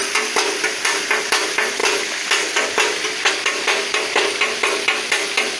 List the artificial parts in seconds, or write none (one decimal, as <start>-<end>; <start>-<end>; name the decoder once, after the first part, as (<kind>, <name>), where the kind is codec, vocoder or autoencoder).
none